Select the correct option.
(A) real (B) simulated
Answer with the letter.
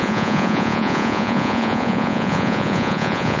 B